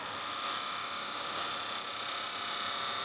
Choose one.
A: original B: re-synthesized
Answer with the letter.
A